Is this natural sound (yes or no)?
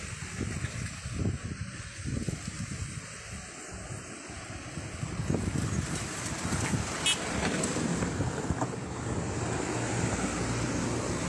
yes